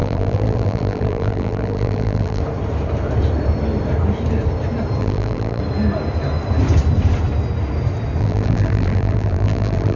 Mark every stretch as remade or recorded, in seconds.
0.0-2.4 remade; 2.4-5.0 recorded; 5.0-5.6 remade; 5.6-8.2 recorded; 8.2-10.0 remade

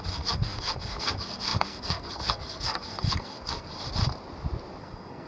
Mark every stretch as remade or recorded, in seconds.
0.0-3.7 remade; 3.7-4.8 recorded; 4.8-5.3 remade

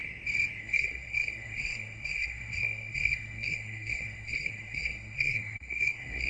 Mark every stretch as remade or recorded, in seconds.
0.0-0.6 recorded; 0.6-6.3 remade

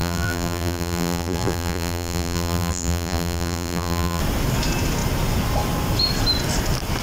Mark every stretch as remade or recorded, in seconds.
0.0-4.2 remade; 4.2-7.0 recorded

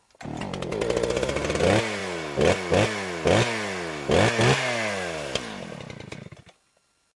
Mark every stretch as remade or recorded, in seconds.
0.0-7.2 recorded

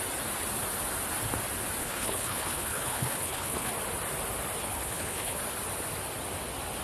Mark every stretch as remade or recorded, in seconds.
0.0-1.8 recorded; 1.8-3.7 remade; 3.7-4.6 recorded; 4.6-5.4 remade; 5.4-6.8 recorded

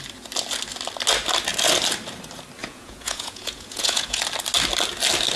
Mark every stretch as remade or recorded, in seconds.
0.0-2.6 recorded; 2.6-4.2 remade; 4.2-5.4 recorded

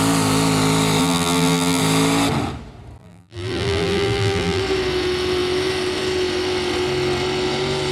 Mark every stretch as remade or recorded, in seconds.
0.0-1.0 recorded; 1.0-1.8 remade; 1.8-3.0 recorded; 3.0-4.6 remade; 4.6-7.9 recorded